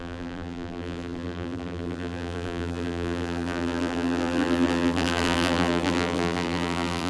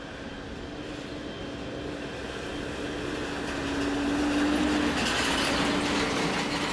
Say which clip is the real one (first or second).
second